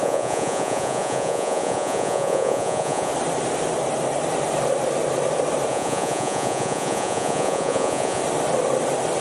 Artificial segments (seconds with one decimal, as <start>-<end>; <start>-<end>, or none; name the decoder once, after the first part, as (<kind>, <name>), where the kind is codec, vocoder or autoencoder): 0.0-3.1 (vocoder, Vocos); 5.7-8.2